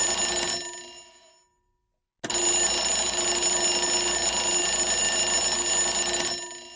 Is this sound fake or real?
real